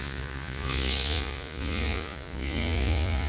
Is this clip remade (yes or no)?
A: yes